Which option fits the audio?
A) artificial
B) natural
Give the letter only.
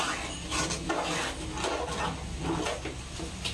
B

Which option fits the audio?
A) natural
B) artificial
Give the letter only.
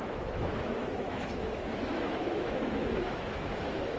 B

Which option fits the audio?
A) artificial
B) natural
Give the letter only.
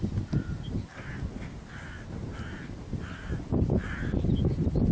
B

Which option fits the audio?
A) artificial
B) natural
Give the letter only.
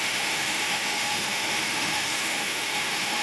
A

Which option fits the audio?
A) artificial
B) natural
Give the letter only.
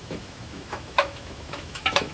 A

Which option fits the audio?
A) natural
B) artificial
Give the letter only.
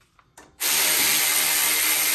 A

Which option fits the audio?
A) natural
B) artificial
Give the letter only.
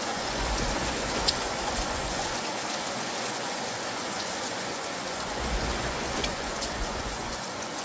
B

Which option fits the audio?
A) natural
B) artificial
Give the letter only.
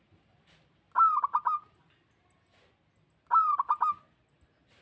A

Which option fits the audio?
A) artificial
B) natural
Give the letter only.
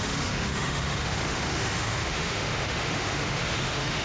A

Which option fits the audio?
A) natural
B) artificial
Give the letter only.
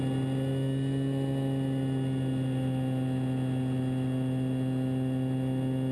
A